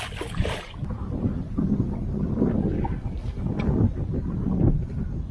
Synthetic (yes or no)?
no